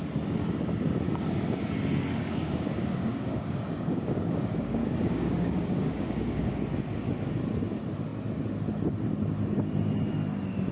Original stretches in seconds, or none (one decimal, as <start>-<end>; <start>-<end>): 0.0-2.2; 6.5-10.7